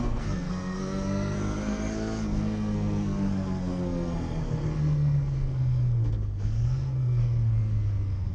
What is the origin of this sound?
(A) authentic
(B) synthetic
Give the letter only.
B